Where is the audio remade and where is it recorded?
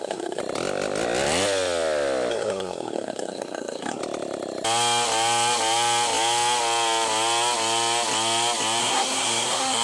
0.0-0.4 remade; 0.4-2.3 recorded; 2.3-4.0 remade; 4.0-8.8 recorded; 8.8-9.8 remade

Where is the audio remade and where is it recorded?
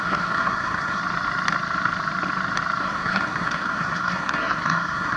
0.0-1.0 remade; 1.0-2.8 recorded; 2.8-5.2 remade